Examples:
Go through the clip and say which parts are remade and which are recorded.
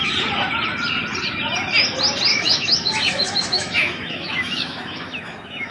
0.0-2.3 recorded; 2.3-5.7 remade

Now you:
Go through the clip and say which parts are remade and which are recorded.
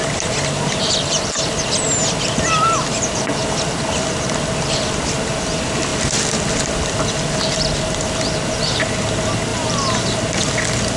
0.0-9.5 recorded; 9.5-10.2 remade; 10.2-11.0 recorded